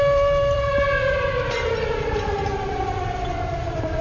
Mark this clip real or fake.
fake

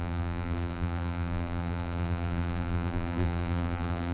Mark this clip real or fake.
fake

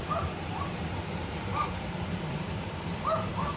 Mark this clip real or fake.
fake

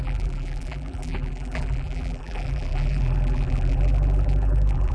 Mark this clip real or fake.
fake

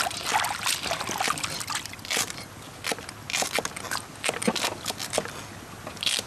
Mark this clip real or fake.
real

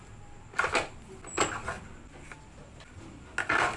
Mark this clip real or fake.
real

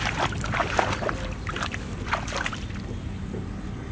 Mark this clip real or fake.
fake